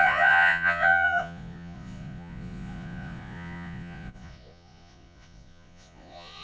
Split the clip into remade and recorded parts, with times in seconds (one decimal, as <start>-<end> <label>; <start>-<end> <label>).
0.0-6.4 remade